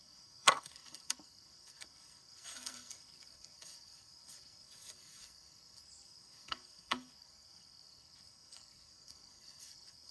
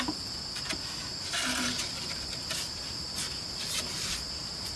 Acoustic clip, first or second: second